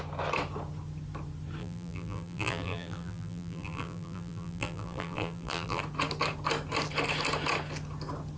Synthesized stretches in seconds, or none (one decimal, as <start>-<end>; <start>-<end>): 1.6-5.8